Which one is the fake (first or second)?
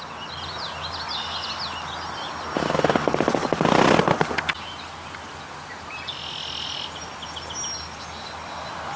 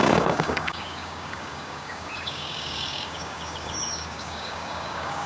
second